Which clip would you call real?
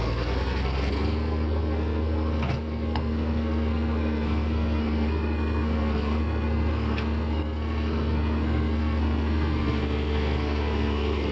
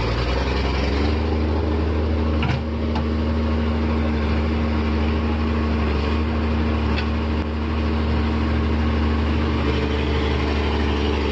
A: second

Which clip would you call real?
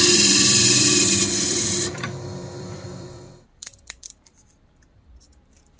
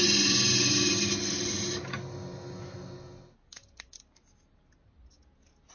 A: second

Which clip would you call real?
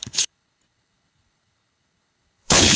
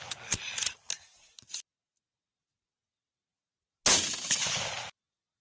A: second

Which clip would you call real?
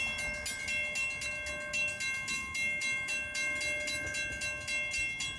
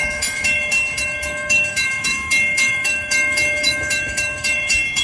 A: first